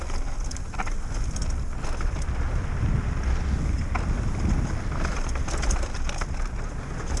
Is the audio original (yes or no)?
yes